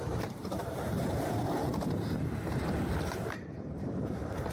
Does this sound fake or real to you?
fake